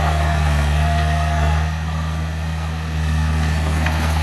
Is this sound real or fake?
fake